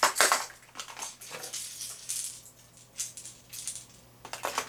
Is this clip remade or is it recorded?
recorded